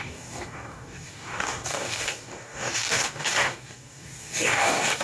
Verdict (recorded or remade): remade